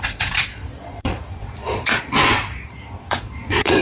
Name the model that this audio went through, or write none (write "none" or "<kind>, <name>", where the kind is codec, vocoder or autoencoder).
vocoder, Vocos